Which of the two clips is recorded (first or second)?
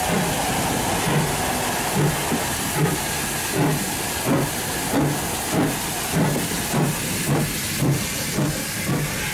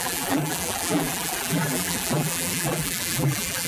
first